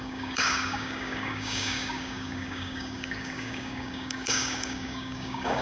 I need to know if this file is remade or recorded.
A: remade